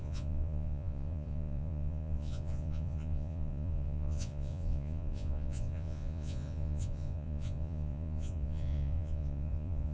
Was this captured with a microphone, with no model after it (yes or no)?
no